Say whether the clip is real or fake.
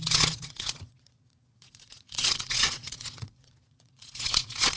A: fake